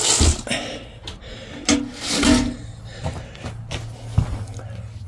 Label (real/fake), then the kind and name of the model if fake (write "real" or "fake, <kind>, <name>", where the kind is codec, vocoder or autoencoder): real